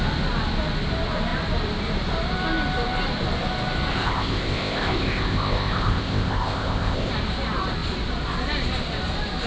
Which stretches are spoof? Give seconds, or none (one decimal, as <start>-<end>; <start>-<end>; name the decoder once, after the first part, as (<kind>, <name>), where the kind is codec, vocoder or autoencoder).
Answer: 3.9-7.1 (codec, ZipCodec)